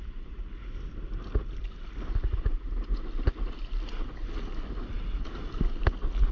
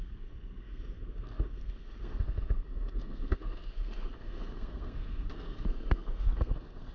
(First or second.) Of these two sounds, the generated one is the second